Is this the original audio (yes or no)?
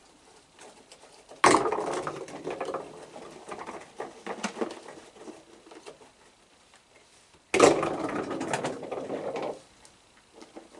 yes